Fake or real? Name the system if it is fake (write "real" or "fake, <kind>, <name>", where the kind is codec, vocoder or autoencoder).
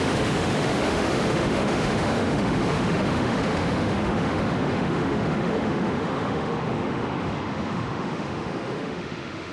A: fake, autoencoder, DAC-VAE